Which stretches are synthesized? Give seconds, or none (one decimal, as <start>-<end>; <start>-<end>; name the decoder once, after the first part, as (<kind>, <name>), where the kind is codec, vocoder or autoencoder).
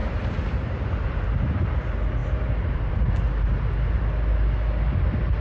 0.0-0.6 (vocoder, BigVGAN v2); 2.2-2.9